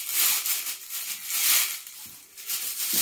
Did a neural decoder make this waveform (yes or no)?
no